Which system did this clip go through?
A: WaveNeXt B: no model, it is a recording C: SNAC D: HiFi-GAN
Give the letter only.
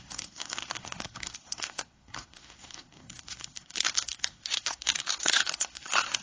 C